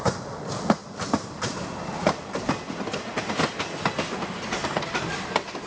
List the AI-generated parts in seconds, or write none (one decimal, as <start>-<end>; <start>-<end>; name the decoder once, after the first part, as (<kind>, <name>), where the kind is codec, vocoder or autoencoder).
0.8-2.5 (vocoder, BigVGAN v2)